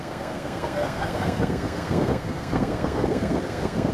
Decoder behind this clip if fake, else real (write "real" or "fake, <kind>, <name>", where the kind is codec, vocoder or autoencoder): fake, codec, SNAC